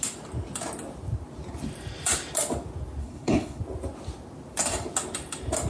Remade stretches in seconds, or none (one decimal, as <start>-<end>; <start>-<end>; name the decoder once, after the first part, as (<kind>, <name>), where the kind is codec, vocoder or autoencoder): 3.0-3.6 (codec, HILCodec)